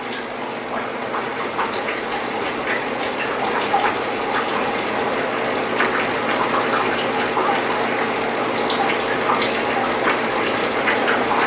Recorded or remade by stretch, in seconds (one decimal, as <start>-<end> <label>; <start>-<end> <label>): 0.0-0.9 recorded; 0.9-5.1 remade; 5.1-10.6 recorded; 10.6-11.5 remade